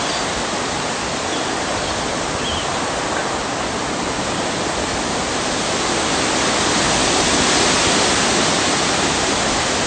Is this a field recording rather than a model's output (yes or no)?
yes